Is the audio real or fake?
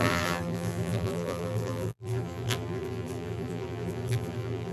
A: fake